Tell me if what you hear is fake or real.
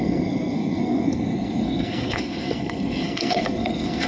fake